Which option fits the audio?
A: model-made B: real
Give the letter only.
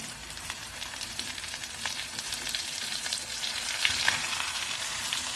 A